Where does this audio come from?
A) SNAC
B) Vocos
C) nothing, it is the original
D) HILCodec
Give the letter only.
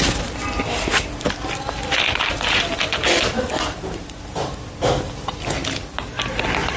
C